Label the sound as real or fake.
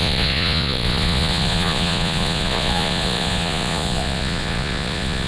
fake